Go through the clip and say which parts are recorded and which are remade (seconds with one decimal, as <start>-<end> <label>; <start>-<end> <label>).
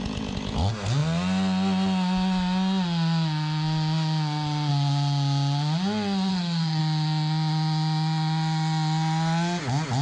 0.0-6.3 recorded; 6.3-6.8 remade; 6.8-10.0 recorded